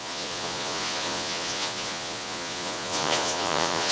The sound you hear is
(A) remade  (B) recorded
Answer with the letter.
A